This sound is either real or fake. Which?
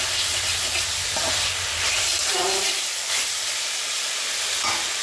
real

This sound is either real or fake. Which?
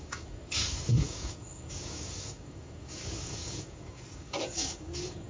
fake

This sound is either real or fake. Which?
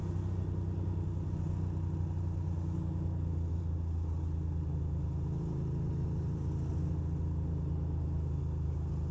real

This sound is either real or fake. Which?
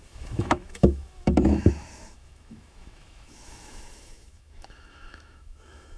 fake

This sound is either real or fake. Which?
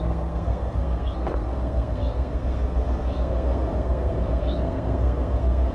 fake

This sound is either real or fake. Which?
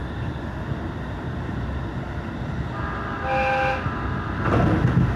real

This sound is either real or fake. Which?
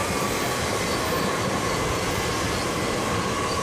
real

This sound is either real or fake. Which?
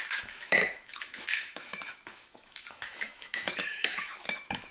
fake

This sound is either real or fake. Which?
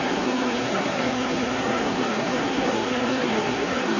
fake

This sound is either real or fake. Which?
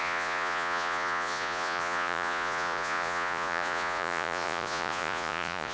fake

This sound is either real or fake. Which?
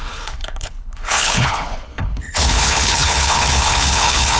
fake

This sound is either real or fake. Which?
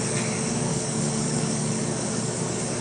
fake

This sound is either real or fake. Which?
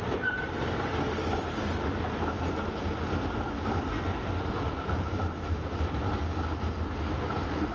real